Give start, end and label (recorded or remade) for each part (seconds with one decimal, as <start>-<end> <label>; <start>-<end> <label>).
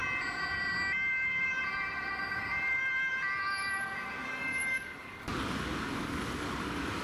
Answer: 0.0-4.2 recorded; 4.2-7.0 remade